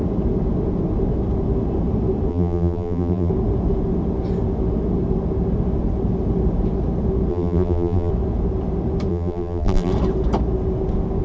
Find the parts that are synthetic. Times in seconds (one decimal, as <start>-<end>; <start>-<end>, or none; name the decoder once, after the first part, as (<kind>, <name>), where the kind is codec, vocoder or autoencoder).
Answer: 2.3-3.3 (vocoder, BigVGAN v2); 7.3-8.1; 9.1-9.9